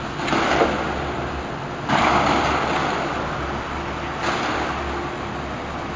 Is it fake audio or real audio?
real